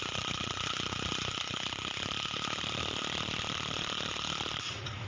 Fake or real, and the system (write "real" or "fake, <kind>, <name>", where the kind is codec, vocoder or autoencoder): fake, vocoder, BigVGAN v2